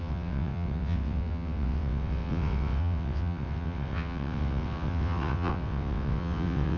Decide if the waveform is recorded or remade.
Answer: remade